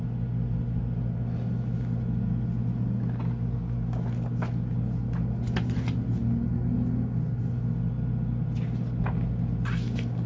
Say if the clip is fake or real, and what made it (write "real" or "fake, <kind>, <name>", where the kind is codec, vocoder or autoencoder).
real